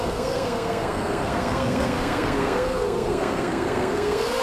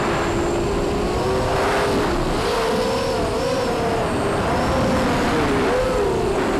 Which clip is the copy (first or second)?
first